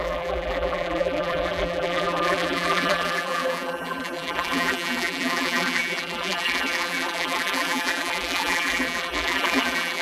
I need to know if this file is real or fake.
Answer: fake